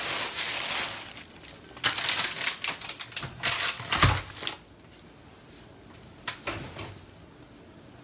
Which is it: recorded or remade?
recorded